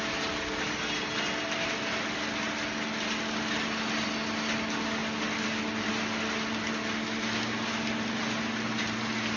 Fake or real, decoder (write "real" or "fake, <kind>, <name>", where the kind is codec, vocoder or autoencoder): real